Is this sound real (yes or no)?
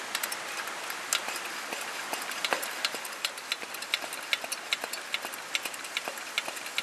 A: yes